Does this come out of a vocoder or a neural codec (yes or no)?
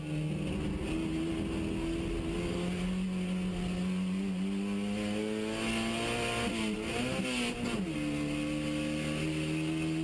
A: no